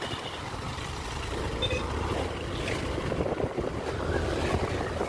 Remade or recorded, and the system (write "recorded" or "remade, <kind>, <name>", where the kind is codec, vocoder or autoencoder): recorded